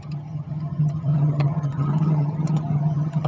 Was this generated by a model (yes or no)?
yes